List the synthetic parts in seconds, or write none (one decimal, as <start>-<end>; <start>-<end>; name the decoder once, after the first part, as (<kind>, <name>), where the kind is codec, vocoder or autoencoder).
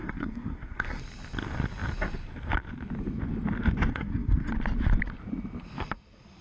0.0-1.0 (codec, SNAC); 3.9-4.5